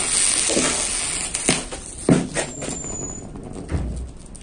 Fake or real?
real